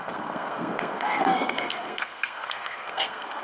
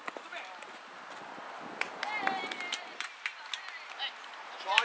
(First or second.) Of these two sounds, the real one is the second